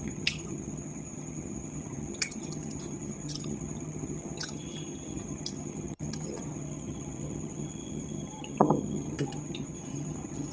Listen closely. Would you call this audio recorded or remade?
remade